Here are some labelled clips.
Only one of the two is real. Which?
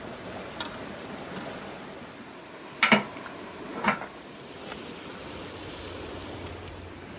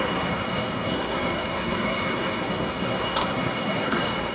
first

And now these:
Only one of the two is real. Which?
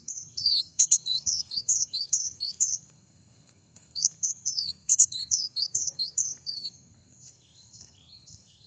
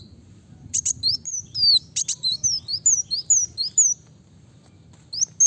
second